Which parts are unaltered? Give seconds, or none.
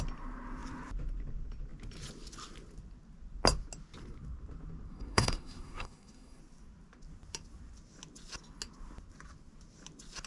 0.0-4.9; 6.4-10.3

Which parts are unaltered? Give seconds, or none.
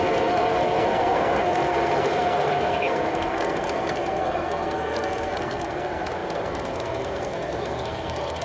none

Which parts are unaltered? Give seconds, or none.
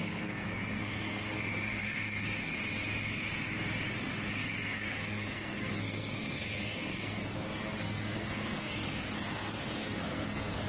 2.5-4.3; 7.2-7.8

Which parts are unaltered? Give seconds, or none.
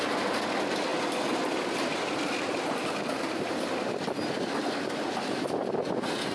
0.0-6.3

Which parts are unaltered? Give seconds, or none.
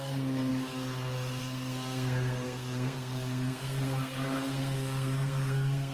0.5-1.4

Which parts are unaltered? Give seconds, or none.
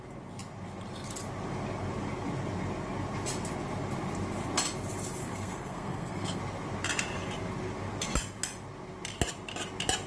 0.0-5.2; 6.4-10.1